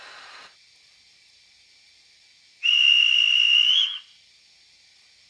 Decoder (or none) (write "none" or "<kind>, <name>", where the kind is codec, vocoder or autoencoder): none